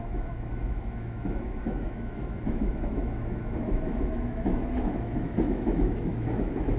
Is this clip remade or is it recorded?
remade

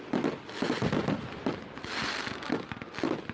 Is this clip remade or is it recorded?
recorded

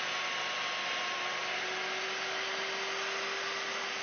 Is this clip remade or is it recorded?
recorded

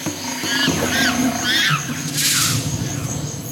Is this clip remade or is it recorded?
recorded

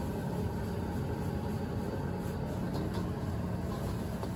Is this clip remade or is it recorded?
recorded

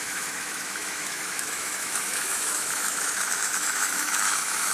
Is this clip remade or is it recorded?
remade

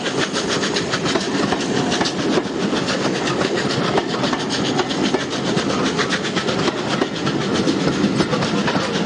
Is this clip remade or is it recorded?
recorded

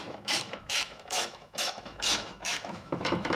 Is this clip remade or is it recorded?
remade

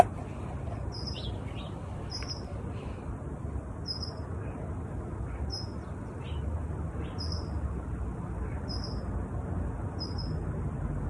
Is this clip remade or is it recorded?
recorded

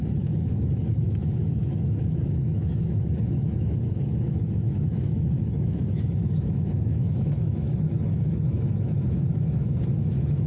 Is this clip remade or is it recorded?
remade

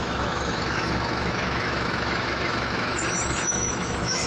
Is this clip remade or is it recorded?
remade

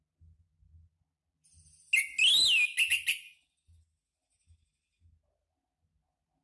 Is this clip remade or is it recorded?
recorded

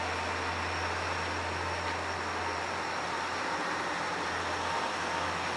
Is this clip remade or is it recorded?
recorded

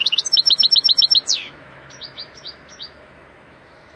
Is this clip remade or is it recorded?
remade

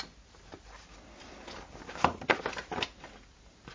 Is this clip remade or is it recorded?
recorded